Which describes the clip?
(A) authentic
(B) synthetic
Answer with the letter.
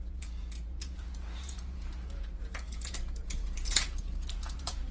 B